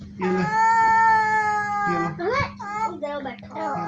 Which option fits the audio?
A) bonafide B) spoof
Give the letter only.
A